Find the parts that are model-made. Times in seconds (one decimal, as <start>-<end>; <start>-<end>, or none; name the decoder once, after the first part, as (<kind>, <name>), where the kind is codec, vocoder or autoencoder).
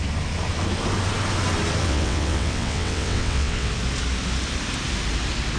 1.8-3.7 (vocoder, WaveNeXt)